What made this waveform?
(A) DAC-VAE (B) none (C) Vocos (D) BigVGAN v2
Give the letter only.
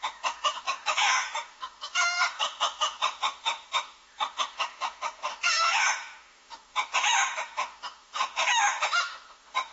A